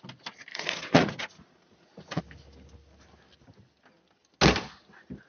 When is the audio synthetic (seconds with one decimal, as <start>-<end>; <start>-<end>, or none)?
0.5-2.2